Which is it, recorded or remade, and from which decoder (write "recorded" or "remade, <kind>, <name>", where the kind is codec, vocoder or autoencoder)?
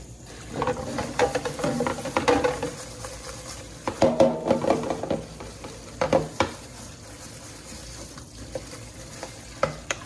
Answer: recorded